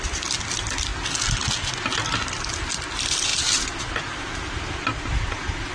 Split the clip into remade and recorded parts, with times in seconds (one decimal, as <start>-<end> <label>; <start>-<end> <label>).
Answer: 0.0-5.7 recorded